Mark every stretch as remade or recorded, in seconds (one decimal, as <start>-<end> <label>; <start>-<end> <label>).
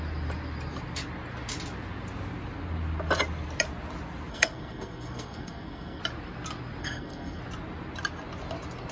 0.0-4.3 recorded; 4.3-6.0 remade; 6.0-6.8 recorded; 6.8-7.4 remade; 7.4-8.9 recorded